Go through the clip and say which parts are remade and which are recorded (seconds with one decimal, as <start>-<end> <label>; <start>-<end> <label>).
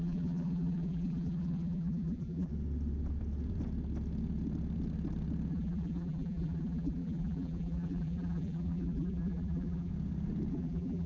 0.0-2.5 remade; 2.5-5.5 recorded; 5.5-9.9 remade; 9.9-10.5 recorded; 10.5-11.1 remade